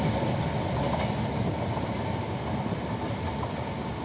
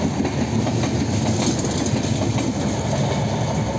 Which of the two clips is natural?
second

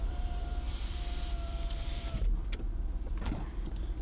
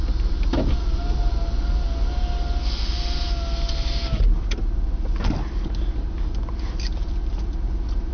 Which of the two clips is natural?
second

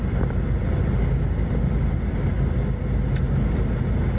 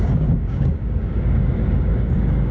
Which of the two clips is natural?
first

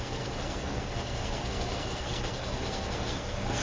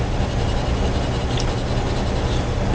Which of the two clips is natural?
second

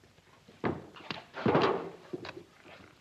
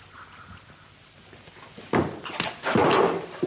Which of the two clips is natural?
second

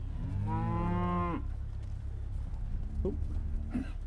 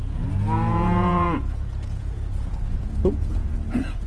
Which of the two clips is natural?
first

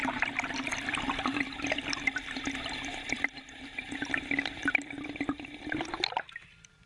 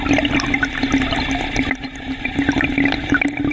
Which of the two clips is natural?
second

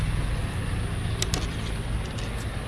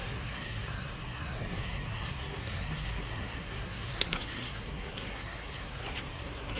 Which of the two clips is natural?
first